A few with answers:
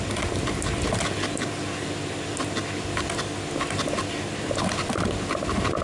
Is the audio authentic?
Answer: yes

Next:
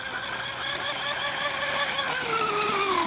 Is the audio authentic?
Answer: yes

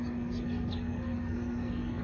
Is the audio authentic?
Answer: no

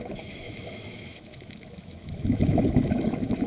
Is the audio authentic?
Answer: no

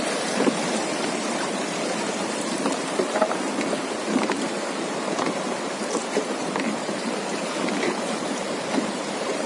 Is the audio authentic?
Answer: no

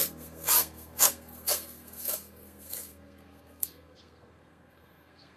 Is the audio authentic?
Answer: no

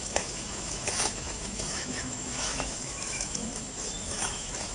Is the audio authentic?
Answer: no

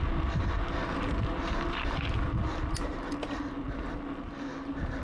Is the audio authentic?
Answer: yes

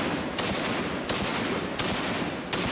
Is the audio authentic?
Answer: yes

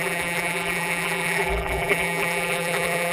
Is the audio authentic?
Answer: no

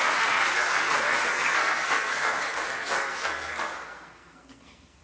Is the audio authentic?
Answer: no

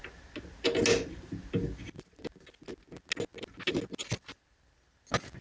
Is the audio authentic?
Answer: yes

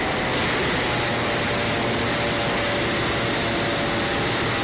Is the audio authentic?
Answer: yes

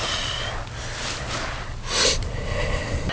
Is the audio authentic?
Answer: yes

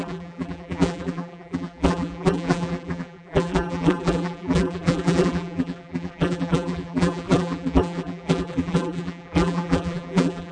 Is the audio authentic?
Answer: no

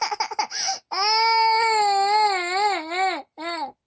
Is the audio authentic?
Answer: yes